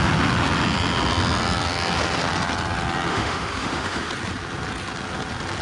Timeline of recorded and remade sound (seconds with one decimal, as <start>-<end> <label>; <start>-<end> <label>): 0.0-3.1 recorded; 3.1-4.1 remade; 4.1-5.6 recorded